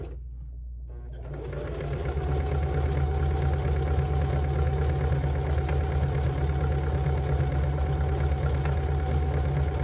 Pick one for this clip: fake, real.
real